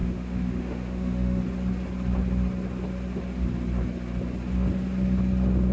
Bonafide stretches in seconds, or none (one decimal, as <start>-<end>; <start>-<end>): 1.4-5.7